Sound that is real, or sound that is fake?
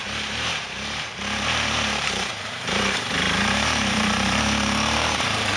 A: fake